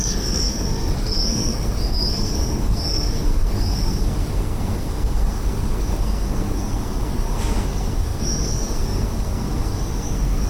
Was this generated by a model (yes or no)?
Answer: yes